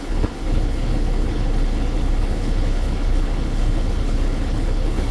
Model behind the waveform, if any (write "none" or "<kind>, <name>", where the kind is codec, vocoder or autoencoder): codec, HILCodec